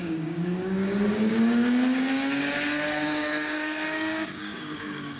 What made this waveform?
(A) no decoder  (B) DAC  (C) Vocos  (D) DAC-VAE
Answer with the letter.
B